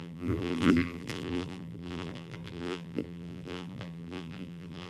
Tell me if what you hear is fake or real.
fake